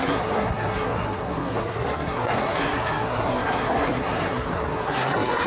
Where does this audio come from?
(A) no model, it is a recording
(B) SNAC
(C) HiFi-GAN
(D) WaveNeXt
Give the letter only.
B